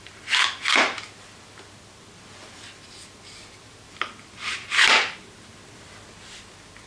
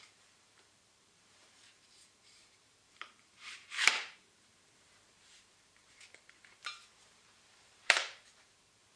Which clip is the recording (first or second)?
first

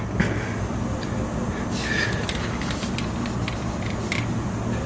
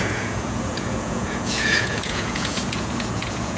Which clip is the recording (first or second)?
first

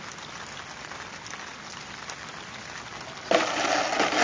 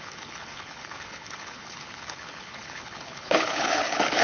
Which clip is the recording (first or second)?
first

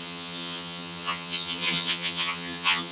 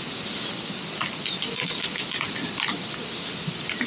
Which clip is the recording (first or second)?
second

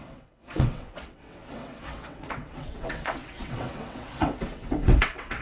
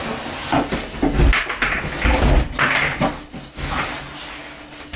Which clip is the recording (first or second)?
second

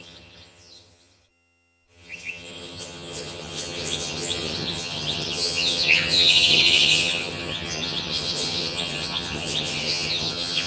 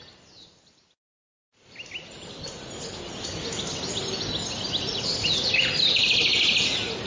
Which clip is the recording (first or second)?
second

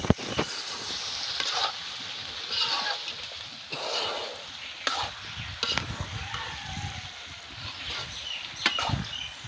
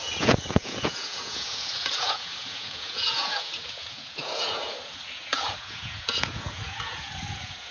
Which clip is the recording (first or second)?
first